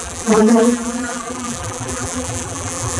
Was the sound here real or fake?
fake